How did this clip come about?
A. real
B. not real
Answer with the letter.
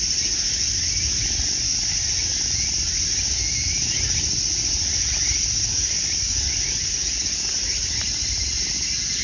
A